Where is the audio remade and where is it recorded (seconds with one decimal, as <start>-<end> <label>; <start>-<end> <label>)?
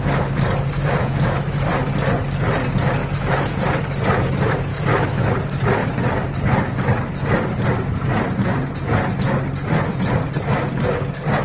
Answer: 0.0-1.0 recorded; 1.0-1.7 remade; 1.7-3.0 recorded; 3.0-3.6 remade; 3.6-4.7 recorded; 4.7-5.3 remade; 5.3-11.4 recorded